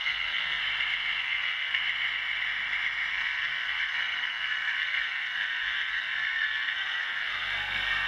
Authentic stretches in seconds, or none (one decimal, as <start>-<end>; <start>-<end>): 0.6-1.2; 1.8-3.1